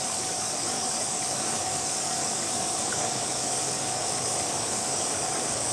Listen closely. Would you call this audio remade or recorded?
remade